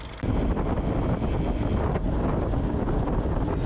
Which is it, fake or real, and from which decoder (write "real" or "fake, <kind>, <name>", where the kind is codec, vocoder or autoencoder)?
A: real